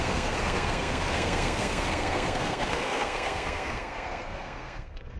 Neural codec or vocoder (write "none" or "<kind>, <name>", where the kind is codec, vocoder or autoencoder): codec, SNAC